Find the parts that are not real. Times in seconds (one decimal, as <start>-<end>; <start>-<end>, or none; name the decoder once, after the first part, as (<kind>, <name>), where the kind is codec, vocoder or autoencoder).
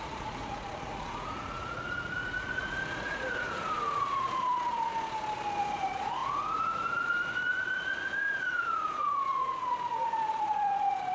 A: 0.0-4.9 (vocoder, Vocos); 5.6-11.1